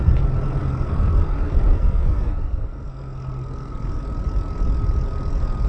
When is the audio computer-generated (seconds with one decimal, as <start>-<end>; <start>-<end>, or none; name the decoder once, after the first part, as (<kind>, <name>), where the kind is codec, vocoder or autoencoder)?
0.6-4.0 (codec, SNAC)